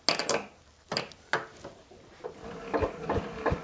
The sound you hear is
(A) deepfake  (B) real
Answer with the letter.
B